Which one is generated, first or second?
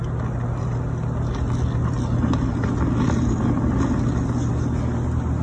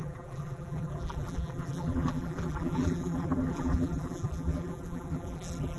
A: second